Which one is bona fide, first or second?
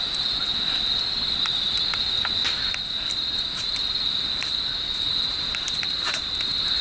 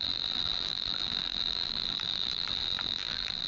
first